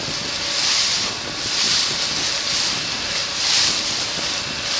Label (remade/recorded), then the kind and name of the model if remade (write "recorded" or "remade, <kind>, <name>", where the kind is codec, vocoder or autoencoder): recorded